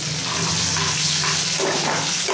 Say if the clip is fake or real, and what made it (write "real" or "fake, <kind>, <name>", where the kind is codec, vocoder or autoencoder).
real